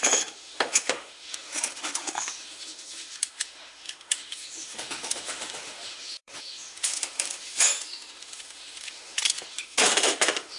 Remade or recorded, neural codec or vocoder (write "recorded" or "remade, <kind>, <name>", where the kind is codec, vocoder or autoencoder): remade, autoencoder, DAC-VAE